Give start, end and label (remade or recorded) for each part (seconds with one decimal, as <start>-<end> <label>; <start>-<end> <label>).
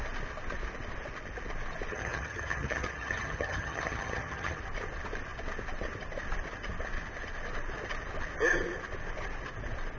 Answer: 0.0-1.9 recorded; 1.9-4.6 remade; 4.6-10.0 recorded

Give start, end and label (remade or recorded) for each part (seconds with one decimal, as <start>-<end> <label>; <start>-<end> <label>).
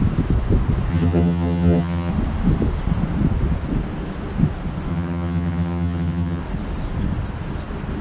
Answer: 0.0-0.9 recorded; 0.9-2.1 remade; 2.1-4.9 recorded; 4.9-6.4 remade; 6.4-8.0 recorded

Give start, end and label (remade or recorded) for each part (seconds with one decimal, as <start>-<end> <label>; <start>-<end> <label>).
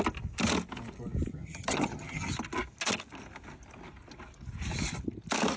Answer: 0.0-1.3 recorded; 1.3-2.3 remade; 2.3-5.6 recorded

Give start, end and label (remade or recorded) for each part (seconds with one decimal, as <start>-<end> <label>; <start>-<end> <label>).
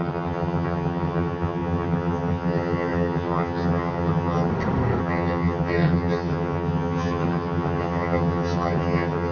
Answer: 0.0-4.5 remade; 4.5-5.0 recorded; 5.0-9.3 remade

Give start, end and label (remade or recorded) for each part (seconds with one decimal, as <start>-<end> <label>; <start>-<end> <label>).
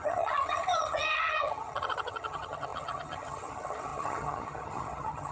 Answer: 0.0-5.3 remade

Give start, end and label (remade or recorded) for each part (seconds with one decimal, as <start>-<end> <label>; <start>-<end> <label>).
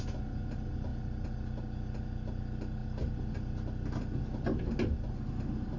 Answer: 0.0-5.8 recorded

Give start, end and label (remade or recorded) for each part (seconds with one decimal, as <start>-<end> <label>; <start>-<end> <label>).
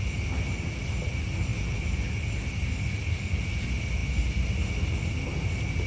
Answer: 0.0-5.9 recorded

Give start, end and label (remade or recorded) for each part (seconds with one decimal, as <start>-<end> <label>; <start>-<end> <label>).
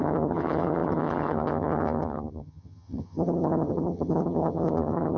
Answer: 0.0-5.2 remade